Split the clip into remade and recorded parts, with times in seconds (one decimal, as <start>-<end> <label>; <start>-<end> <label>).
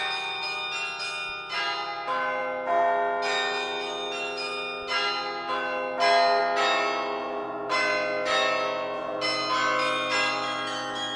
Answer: 0.0-11.2 recorded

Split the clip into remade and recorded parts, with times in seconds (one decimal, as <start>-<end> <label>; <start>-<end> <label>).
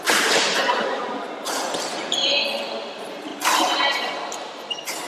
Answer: 0.0-1.0 remade; 1.0-2.8 recorded; 2.8-3.3 remade; 3.3-4.3 recorded; 4.3-5.1 remade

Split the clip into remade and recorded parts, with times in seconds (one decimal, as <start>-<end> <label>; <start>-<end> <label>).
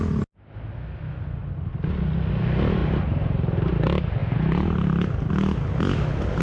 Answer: 0.0-2.8 recorded; 2.8-3.7 remade; 3.7-4.2 recorded; 4.2-5.3 remade; 5.3-6.4 recorded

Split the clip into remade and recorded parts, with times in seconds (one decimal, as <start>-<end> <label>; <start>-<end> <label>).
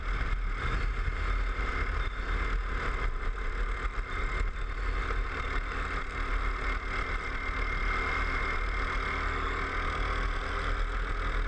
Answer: 0.0-11.5 recorded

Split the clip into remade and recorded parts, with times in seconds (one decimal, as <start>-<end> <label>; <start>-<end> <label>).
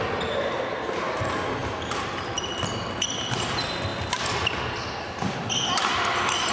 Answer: 0.0-1.6 recorded; 1.6-2.6 remade; 2.6-6.5 recorded